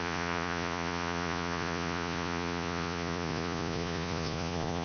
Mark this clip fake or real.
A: fake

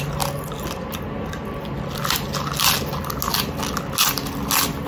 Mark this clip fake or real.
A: real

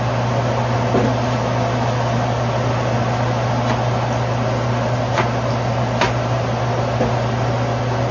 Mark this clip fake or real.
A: real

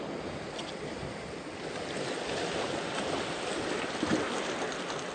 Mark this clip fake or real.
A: real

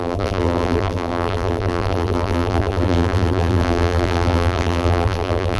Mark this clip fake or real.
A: fake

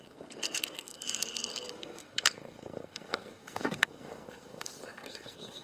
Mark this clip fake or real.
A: fake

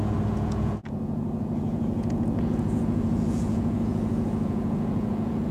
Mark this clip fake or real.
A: fake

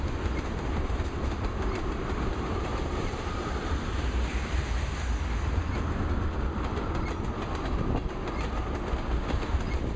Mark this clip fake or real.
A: real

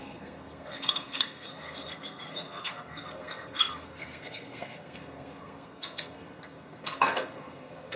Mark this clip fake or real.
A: fake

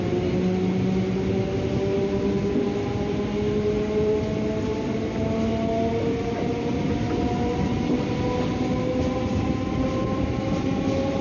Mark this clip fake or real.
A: real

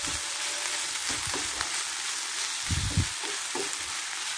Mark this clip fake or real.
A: real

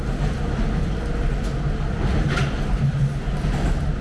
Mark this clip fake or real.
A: real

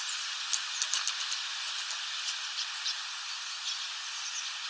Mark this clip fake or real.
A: real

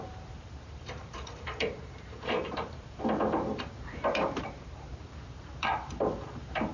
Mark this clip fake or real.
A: fake